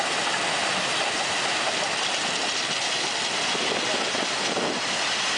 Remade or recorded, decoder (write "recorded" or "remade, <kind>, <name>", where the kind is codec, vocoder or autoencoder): recorded